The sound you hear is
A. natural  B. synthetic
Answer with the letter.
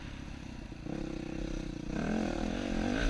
A